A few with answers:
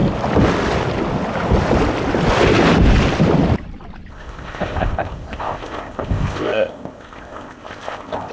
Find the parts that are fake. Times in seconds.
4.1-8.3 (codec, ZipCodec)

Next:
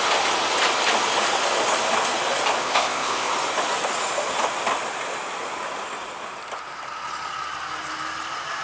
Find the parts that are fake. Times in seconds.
2.6-3.3 (codec, ZipCodec)